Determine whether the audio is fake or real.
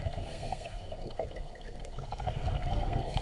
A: fake